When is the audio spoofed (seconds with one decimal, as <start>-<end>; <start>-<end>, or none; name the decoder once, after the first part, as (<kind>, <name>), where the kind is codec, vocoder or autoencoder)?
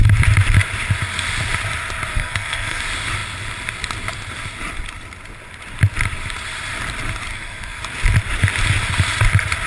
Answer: 2.1-2.8 (codec, SNAC); 7.3-7.8